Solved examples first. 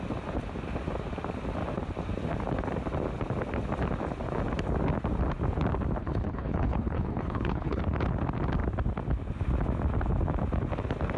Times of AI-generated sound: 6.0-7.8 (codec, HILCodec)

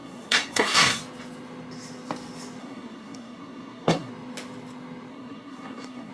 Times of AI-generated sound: 0.0-1.0 (codec, SNAC); 2.6-4.1; 5.1-6.1

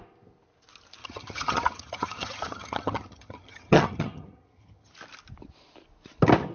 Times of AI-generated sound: 1.0-4.9 (vocoder, HiFi-GAN)

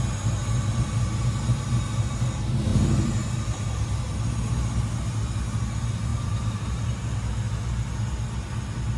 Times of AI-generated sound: 6.1-6.9 (vocoder, BigVGAN v2)